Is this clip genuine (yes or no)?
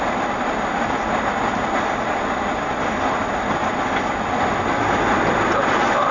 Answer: no